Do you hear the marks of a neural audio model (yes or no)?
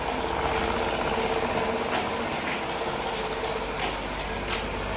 no